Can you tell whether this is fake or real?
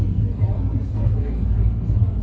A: fake